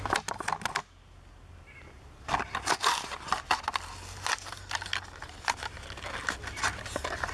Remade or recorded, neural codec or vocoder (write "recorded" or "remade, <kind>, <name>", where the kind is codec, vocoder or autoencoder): recorded